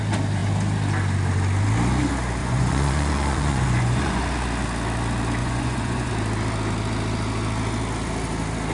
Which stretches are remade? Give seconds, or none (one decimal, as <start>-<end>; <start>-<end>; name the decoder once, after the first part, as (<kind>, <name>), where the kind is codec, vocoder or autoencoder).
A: 2.4-4.2 (vocoder, Vocos); 5.4-6.1